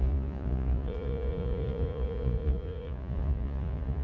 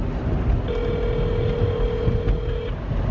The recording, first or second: second